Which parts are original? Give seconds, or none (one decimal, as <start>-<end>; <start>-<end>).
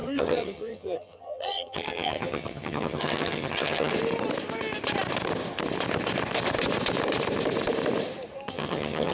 3.9-8.5